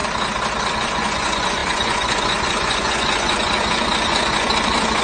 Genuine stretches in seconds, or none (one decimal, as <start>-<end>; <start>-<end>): 0.0-0.7